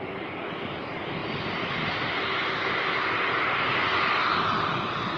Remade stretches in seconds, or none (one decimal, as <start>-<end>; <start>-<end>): none

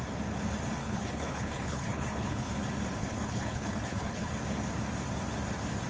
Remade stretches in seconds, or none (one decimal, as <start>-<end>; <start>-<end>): 0.8-2.5; 3.0-4.3